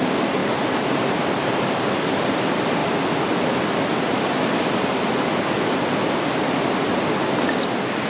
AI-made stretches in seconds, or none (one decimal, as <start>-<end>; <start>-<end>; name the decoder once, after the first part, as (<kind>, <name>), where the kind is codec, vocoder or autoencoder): none